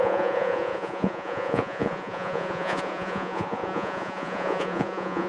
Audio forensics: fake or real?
fake